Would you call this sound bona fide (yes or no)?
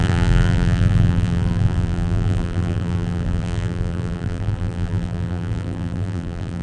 no